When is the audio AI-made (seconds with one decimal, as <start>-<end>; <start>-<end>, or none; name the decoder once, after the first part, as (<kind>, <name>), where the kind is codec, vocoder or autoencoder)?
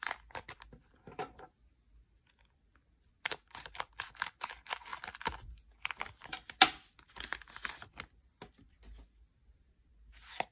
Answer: none